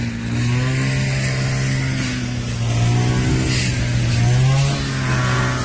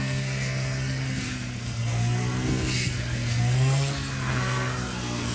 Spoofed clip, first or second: second